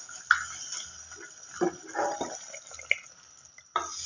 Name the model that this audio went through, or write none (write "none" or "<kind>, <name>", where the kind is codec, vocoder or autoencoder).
none